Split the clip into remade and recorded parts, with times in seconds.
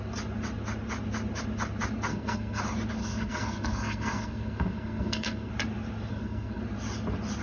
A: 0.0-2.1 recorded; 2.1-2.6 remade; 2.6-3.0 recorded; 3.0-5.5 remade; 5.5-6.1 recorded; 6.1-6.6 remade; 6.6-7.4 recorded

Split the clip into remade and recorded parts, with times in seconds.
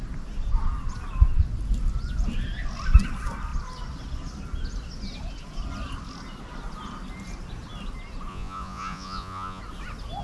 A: 0.0-8.3 recorded; 8.3-9.6 remade; 9.6-10.2 recorded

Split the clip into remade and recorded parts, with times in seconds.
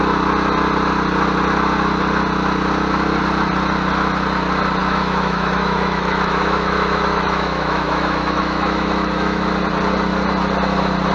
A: 0.0-4.8 recorded; 4.8-9.4 remade; 9.4-11.1 recorded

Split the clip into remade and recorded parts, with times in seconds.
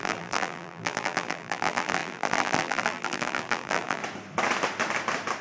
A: 0.0-4.0 remade; 4.0-5.4 recorded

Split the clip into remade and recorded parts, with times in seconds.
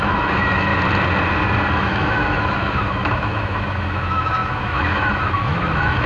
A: 0.0-0.7 remade; 0.7-1.8 recorded; 1.8-6.1 remade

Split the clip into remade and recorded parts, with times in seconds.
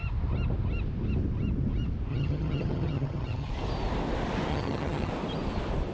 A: 0.0-2.1 recorded; 2.1-3.5 remade; 3.5-4.5 recorded; 4.5-5.1 remade; 5.1-5.9 recorded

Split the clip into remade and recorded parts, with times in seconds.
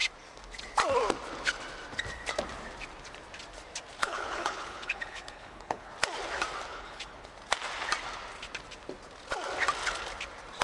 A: 0.0-4.0 recorded; 4.0-5.9 remade; 5.9-6.7 recorded; 6.7-7.3 remade; 7.3-10.6 recorded